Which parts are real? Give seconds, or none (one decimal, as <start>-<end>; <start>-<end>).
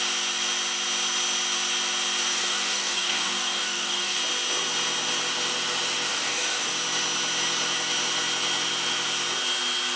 0.0-2.3; 4.2-6.1; 6.7-10.0